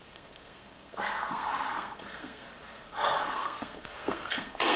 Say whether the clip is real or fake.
fake